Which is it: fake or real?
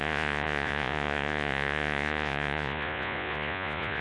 fake